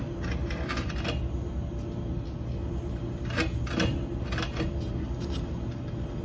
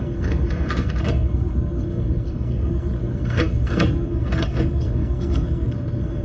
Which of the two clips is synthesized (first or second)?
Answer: second